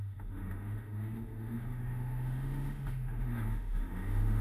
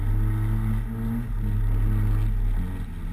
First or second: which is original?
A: second